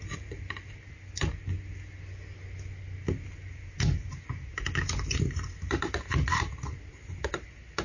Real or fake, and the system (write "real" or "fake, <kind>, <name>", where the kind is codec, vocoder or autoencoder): real